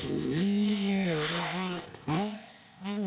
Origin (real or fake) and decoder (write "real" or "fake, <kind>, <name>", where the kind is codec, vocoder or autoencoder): fake, codec, ZipCodec